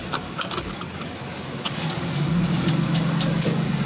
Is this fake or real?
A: fake